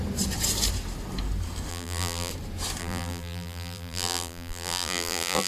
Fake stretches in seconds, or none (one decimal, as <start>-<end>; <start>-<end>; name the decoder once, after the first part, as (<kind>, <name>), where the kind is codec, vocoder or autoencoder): 1.7-2.3 (vocoder, BigVGAN v2); 2.8-5.5